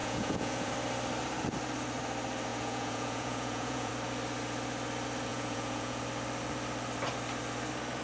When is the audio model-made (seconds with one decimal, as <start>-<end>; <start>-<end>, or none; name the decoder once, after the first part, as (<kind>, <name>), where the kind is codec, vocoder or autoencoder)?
0.0-0.7 (vocoder, Vocos); 2.5-3.9; 5.3-6.0